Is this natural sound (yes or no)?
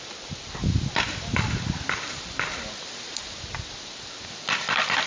yes